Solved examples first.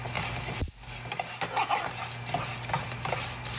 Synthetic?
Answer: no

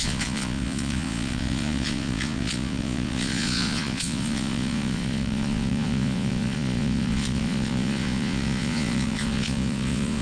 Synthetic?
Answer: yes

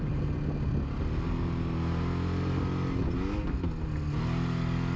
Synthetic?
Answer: no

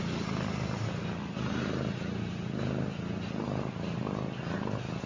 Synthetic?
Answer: no